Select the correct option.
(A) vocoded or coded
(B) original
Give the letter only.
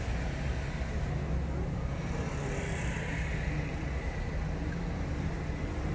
B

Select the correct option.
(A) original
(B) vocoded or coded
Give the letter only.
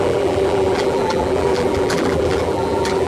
B